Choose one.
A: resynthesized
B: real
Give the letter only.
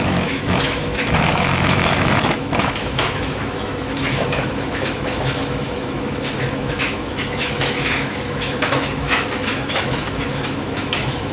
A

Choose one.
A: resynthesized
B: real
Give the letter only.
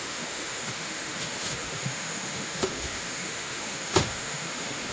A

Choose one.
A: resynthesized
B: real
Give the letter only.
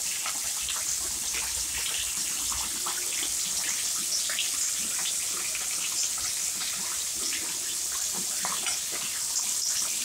B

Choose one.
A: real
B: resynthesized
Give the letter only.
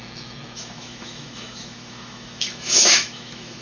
B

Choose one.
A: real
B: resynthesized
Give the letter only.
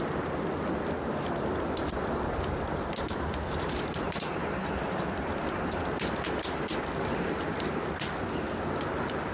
A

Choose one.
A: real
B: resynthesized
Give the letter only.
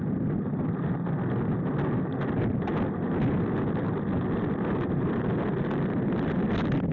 A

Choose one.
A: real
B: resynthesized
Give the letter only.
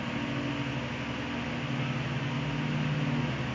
A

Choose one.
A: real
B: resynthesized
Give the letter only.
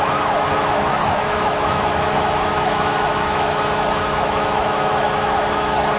B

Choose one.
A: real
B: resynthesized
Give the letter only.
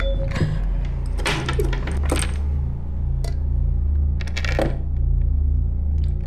A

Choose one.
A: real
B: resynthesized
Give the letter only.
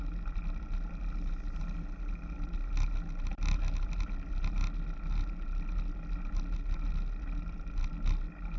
A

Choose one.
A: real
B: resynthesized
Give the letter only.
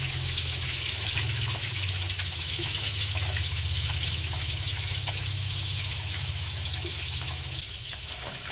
B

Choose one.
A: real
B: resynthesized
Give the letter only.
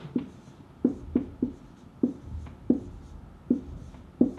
A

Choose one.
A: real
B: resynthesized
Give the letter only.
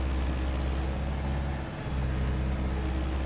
A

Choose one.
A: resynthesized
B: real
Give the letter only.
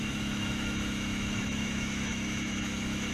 A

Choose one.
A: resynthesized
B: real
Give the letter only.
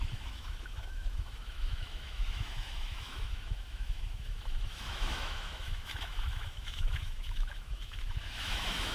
A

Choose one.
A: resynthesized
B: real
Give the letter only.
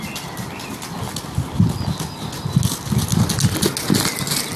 B